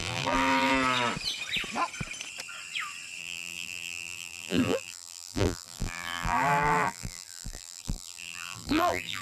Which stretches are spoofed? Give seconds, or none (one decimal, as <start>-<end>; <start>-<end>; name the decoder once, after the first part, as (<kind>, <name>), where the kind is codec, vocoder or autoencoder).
0.0-0.7 (vocoder, BigVGAN v2); 3.2-9.2